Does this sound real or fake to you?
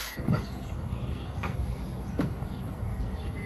fake